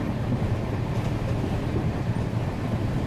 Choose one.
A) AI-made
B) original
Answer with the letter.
B